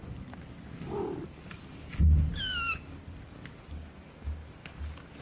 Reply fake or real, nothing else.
real